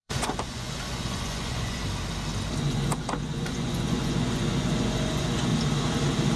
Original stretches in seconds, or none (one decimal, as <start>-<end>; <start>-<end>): 1.8-2.6; 5.5-6.4